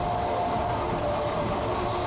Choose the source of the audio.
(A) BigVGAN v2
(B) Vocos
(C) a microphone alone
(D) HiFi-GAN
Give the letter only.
C